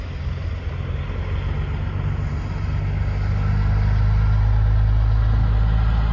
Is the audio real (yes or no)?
yes